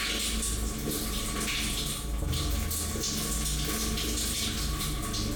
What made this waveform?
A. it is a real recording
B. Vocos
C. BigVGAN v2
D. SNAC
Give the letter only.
A